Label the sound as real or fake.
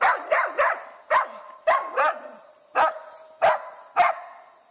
real